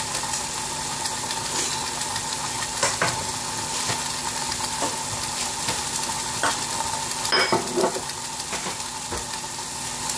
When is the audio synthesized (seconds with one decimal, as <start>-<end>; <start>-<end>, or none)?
none

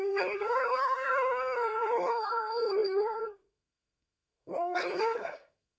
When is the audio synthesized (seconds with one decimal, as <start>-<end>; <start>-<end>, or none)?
0.0-5.8